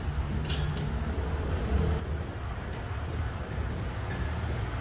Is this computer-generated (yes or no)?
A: no